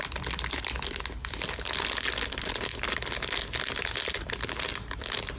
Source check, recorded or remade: recorded